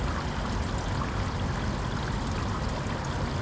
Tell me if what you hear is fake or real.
real